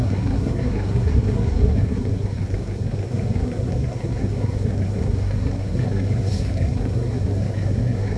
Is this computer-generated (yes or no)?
yes